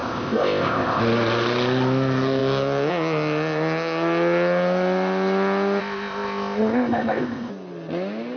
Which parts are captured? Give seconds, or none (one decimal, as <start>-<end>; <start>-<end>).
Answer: 1.0-5.8; 7.5-8.4